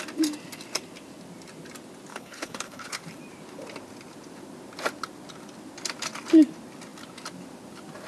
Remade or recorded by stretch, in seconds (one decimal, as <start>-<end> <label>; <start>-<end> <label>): 0.0-2.1 recorded; 2.1-3.0 remade; 3.0-8.1 recorded